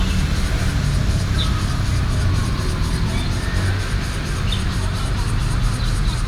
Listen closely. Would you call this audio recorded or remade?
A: recorded